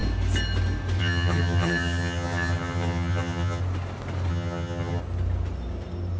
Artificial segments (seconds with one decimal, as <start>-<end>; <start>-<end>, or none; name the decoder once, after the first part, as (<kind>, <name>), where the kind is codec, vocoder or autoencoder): 1.0-3.6 (vocoder, HiFi-GAN); 4.3-5.0